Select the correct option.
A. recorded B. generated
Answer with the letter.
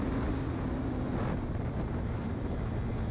A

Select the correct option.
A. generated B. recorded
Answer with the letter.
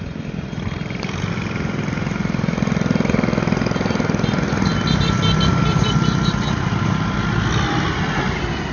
B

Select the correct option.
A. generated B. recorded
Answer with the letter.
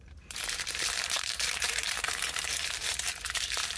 A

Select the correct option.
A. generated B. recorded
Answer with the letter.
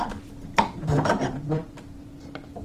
A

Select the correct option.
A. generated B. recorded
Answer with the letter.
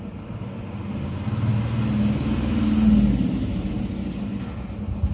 B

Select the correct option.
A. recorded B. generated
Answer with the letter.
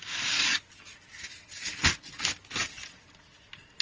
A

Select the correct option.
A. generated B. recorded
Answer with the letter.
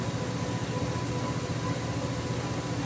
B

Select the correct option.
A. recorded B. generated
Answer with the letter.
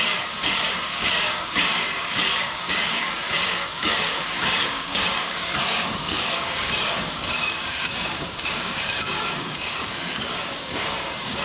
B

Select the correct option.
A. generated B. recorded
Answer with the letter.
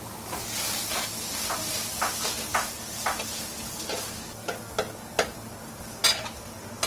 B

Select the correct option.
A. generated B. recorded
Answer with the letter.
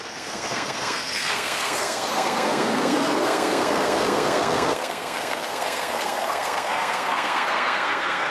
A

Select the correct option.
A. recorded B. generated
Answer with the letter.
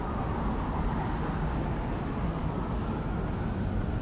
A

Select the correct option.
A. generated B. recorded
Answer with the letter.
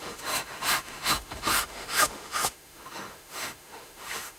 A